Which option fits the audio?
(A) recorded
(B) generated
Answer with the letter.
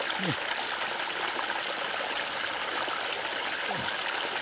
A